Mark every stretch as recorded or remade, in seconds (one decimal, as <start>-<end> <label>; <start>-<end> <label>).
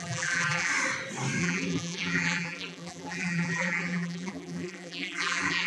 0.0-0.7 remade; 0.7-1.4 recorded; 1.4-5.7 remade